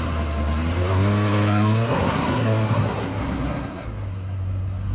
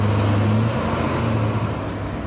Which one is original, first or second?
second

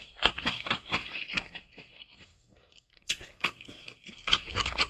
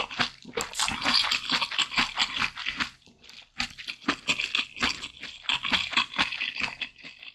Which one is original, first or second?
second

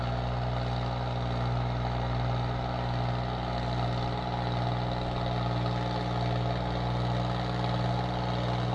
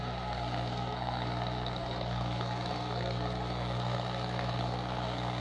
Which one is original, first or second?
first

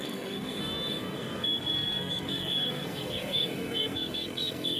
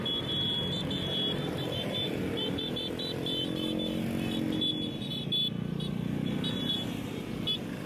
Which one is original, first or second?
second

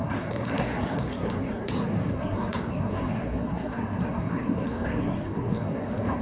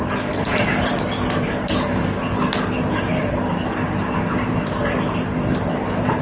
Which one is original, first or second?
second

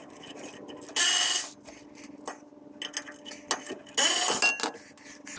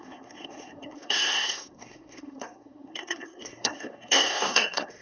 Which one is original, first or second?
first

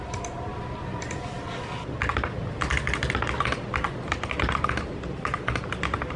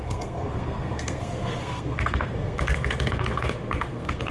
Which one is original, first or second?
first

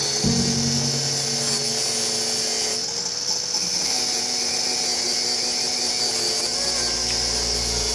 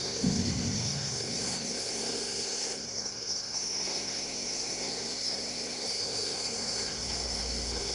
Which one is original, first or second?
first